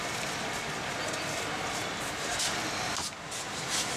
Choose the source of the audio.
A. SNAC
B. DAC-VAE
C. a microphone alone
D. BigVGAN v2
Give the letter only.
C